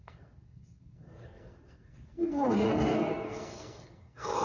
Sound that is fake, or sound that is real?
fake